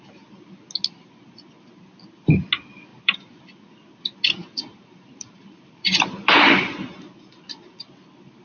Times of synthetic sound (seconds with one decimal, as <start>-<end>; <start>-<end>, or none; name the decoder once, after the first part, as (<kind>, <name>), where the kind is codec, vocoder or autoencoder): 2.9-3.4 (vocoder, BigVGAN v2); 4.4-8.0